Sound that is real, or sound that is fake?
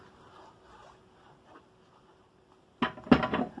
real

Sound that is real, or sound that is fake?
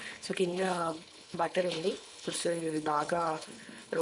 fake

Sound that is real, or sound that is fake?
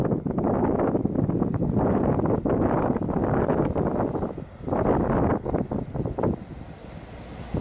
real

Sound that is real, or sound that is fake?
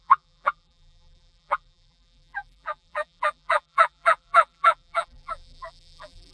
fake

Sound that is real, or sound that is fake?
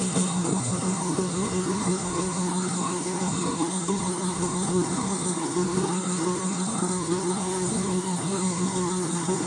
fake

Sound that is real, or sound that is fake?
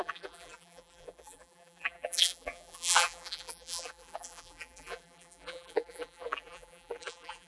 fake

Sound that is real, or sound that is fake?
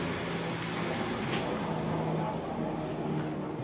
real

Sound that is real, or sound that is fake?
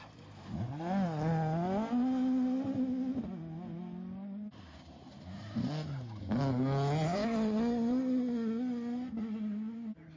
real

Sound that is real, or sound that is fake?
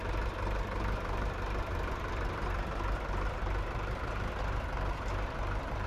fake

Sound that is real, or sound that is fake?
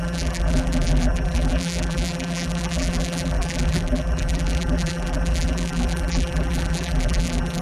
fake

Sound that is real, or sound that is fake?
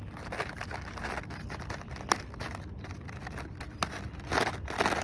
real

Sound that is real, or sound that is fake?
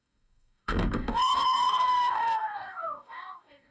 fake